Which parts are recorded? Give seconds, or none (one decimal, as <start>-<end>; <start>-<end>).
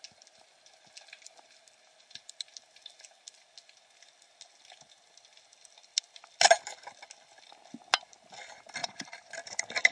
0.0-8.8; 9.3-9.9